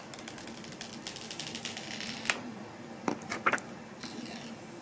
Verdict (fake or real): real